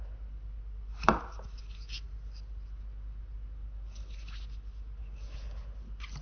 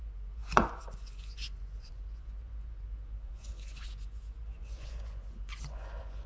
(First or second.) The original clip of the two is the first